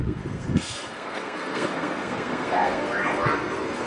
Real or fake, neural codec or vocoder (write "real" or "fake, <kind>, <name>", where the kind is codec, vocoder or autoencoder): fake, codec, SNAC